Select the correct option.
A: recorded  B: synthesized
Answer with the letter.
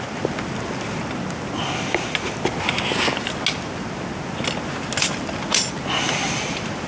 A